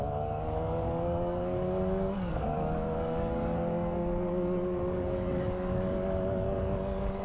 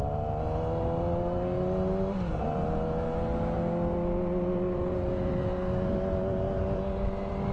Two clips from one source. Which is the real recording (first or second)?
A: second